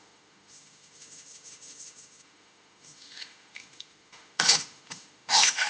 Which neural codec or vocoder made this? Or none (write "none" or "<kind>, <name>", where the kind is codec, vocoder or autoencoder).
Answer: autoencoder, DAC-VAE